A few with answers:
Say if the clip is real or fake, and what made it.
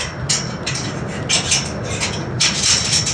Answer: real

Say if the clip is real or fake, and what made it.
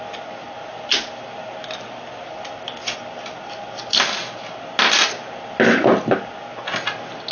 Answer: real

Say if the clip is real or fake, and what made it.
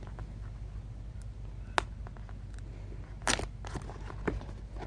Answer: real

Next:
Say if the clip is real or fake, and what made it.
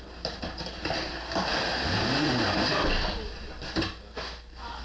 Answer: real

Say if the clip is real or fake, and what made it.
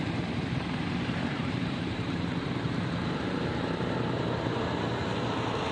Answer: fake, vocoder, BigVGAN v2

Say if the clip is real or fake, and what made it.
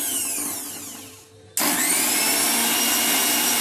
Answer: real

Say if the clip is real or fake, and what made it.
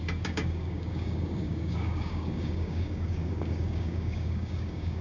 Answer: fake, codec, DAC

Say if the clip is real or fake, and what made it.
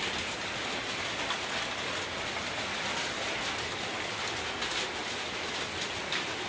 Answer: real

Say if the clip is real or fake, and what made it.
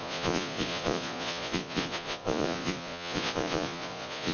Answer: fake, vocoder, Vocos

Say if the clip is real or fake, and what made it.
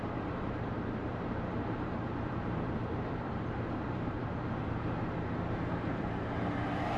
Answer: fake, vocoder, BigVGAN v2